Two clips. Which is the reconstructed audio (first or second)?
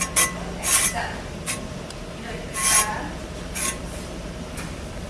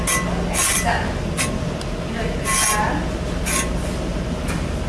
first